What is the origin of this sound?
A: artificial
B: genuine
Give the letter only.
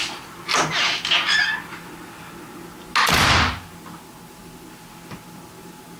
B